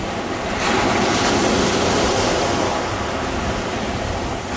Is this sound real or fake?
real